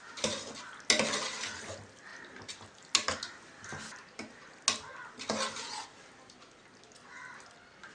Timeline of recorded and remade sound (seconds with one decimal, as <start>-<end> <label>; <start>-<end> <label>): 0.0-7.9 recorded